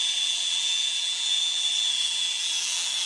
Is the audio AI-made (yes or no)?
yes